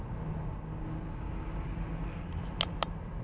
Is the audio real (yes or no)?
yes